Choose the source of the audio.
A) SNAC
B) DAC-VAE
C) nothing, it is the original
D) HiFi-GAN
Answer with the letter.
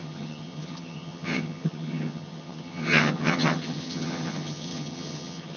D